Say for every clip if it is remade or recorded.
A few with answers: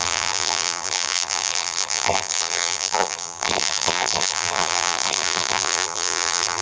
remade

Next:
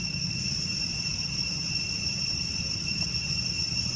remade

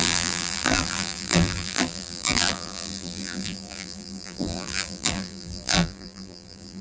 remade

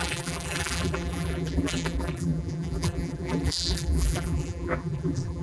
remade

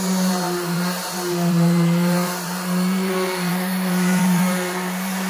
remade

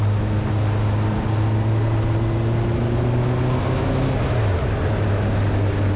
recorded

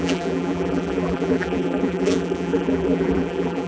remade